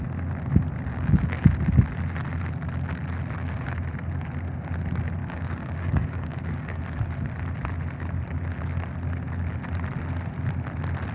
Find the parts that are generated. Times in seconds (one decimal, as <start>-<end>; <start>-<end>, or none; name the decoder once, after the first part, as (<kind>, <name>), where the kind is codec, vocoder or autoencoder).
0.9-1.4 (codec, DAC); 5.2-6.8